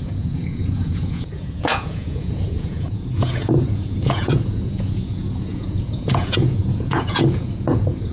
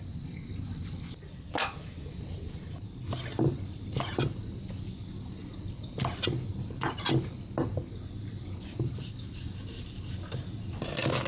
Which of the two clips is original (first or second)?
second